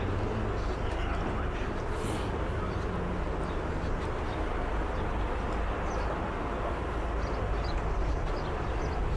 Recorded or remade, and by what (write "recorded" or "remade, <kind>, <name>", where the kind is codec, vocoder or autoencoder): recorded